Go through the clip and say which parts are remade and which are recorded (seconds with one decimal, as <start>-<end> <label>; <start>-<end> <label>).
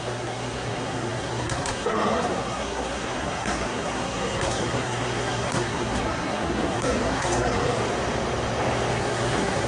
0.0-7.8 remade; 7.8-8.9 recorded; 8.9-9.7 remade